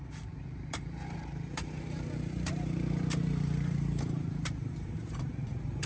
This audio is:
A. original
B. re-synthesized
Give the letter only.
B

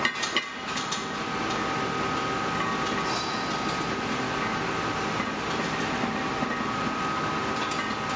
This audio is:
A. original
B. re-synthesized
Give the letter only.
A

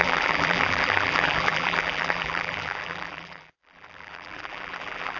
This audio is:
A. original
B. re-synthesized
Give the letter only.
B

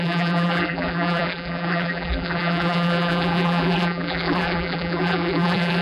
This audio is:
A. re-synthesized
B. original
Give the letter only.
A